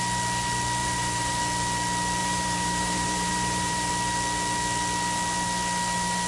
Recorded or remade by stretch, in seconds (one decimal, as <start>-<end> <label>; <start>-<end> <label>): 0.0-0.8 recorded; 0.8-1.4 remade; 1.4-2.2 recorded; 2.2-3.9 remade; 3.9-6.3 recorded